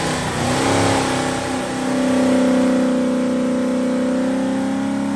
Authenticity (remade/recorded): recorded